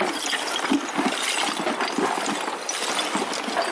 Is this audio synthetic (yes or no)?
no